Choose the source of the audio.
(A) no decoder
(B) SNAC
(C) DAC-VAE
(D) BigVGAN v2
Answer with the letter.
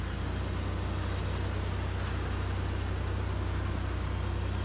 A